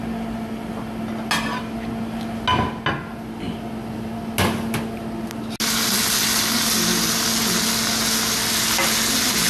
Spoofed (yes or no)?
no